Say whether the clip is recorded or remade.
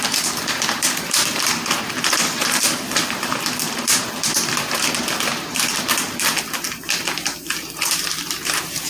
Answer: remade